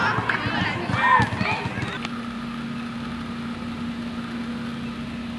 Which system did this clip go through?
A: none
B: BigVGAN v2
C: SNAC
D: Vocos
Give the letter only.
A